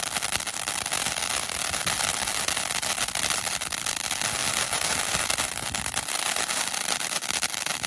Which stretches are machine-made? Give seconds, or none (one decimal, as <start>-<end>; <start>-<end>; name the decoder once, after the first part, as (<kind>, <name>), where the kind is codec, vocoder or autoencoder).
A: 4.4-7.9 (vocoder, BigVGAN v2)